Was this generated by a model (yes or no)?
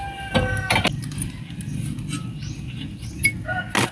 no